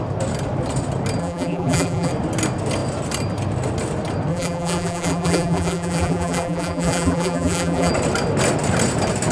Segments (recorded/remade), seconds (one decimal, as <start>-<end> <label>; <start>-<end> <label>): 0.0-1.2 recorded; 1.2-2.1 remade; 2.1-4.3 recorded; 4.3-7.9 remade; 7.9-9.3 recorded